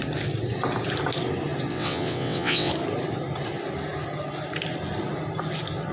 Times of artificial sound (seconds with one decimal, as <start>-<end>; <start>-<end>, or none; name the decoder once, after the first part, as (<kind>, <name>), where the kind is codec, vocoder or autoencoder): 1.7-2.7 (vocoder, WaveNeXt)